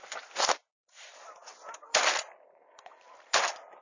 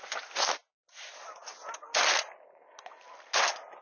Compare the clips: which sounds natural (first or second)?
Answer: second